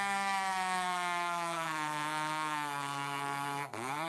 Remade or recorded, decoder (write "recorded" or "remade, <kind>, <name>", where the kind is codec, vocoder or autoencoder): remade, codec, SNAC